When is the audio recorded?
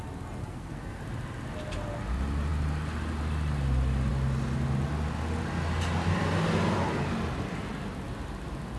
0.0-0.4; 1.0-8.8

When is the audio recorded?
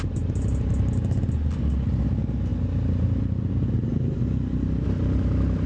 0.0-5.7